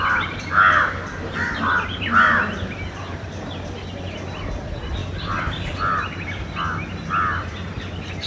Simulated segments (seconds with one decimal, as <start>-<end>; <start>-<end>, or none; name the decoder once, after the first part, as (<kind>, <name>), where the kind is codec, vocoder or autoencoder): none